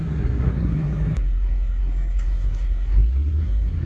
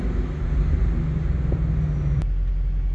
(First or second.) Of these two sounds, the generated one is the first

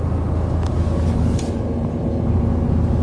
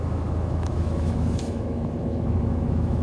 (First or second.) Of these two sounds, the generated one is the second